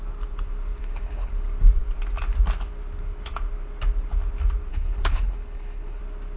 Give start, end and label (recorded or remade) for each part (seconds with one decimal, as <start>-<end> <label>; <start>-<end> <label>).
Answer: 0.0-0.8 recorded; 0.8-1.3 remade; 1.3-4.7 recorded; 4.7-6.0 remade; 6.0-6.4 recorded